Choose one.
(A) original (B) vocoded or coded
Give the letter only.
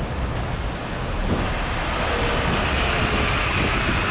A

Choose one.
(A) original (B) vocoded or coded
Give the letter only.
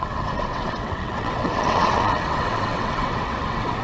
B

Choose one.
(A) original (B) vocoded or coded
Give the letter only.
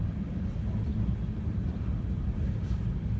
A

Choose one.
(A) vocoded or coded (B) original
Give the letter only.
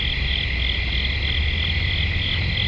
B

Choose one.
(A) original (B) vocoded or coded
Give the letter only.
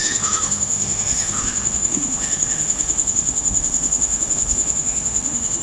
B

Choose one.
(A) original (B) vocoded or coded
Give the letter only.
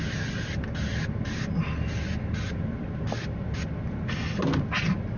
A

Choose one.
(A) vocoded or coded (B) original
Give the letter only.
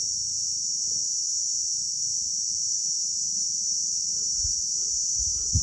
A